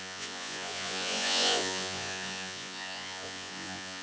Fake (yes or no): yes